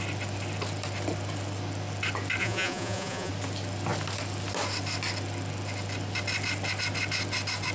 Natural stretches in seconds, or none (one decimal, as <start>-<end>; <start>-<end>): 0.0-2.4; 3.3-7.7